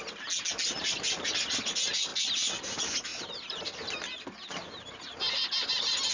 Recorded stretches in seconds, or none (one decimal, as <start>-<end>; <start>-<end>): 0.0-6.1